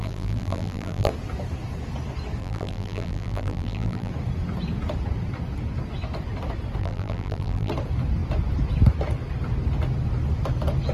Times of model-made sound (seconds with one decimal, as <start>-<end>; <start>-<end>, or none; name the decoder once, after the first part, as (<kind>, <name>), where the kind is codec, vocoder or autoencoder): 0.0-1.1 (vocoder, BigVGAN v2); 2.4-4.1; 6.8-7.7